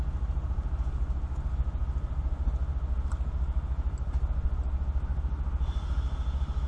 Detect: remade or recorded recorded